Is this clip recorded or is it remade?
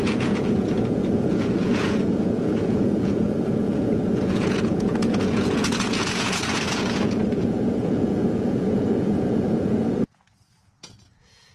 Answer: remade